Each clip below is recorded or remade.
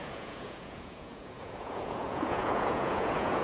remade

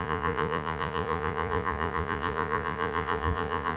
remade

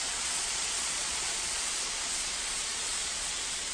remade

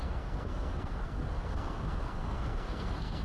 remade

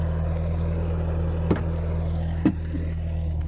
recorded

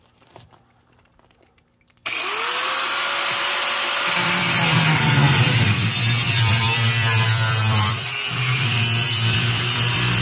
remade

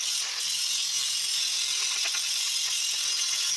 recorded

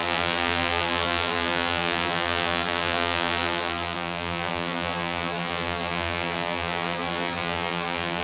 remade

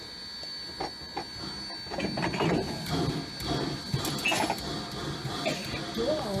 recorded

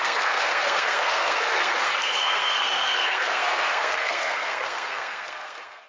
remade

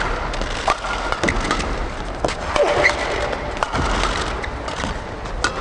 recorded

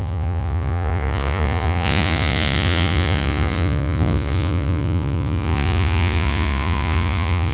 remade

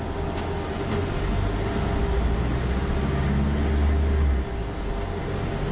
recorded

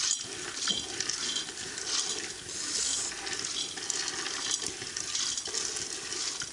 recorded